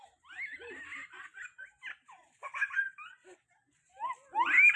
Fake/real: real